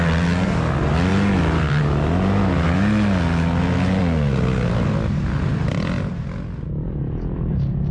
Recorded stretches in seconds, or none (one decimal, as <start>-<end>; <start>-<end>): 0.0-7.9